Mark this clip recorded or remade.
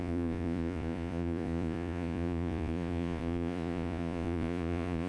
remade